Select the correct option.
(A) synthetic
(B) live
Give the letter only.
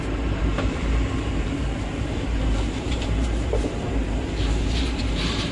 A